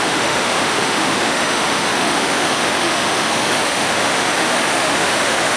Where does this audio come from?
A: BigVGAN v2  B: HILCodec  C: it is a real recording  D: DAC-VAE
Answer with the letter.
D